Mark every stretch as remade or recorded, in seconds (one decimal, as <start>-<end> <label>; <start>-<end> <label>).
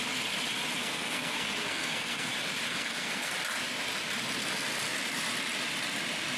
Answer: 0.0-0.8 recorded; 0.8-2.3 remade; 2.3-2.7 recorded; 2.7-3.3 remade; 3.3-6.4 recorded